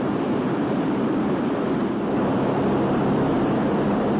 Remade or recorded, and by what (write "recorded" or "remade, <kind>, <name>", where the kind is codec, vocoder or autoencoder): remade, vocoder, BigVGAN v2